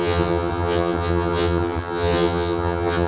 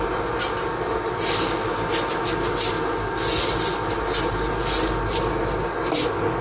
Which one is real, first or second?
second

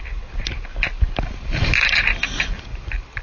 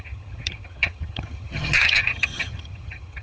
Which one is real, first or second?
first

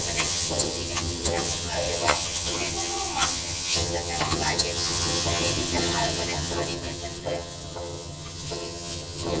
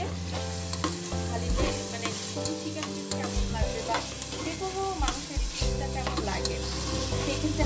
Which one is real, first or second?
second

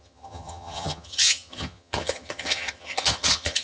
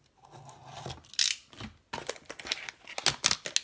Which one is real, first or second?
second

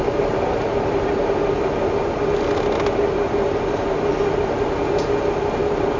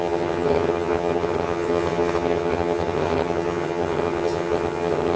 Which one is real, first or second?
first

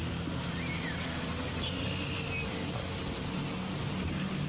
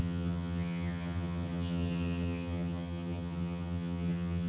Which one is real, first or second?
first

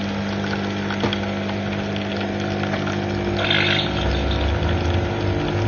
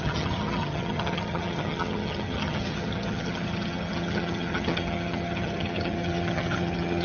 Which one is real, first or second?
first